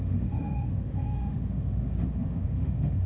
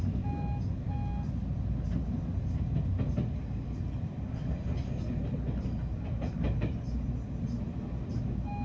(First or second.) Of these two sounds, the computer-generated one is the first